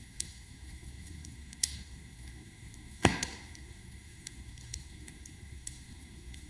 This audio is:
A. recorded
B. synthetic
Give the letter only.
B